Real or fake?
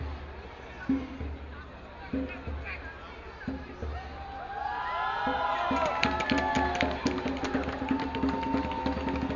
real